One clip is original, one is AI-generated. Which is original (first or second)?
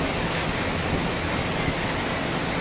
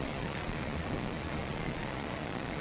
first